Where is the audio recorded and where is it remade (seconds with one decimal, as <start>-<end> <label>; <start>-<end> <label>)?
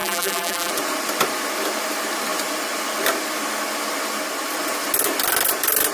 0.0-0.7 remade; 0.7-5.9 recorded